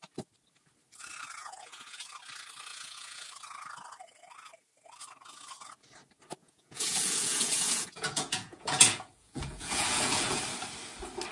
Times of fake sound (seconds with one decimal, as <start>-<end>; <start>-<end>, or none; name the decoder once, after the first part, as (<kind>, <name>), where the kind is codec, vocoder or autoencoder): 1.4-2.0 (vocoder, Vocos); 2.7-3.3; 6.4-10.4